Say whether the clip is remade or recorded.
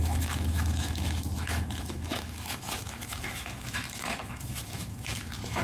remade